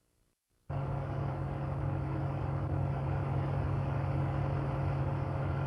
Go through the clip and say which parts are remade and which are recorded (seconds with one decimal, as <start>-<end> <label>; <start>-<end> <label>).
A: 0.0-4.4 remade; 4.4-5.0 recorded; 5.0-5.7 remade